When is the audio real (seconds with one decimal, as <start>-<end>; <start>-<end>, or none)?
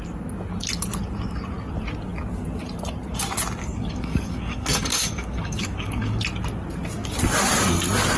0.0-3.6; 6.2-8.2